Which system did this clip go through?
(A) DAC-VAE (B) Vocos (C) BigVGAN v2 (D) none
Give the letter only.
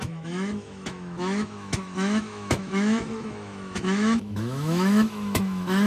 A